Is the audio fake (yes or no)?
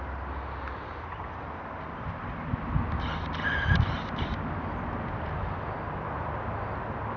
no